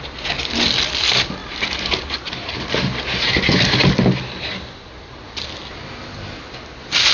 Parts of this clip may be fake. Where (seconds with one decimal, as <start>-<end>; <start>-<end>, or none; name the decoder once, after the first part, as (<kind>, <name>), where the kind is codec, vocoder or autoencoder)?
none